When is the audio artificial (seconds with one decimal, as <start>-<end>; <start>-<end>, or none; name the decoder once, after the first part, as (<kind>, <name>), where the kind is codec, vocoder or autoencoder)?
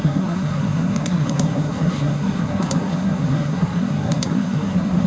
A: 0.0-5.1 (codec, SNAC)